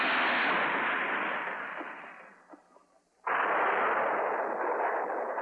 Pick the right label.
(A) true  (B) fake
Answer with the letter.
A